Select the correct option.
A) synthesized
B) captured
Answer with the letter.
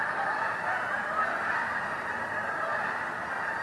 B